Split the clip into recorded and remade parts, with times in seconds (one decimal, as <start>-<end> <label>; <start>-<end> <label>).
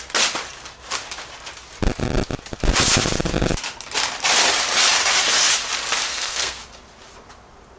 0.0-6.1 recorded; 6.1-6.6 remade; 6.6-7.8 recorded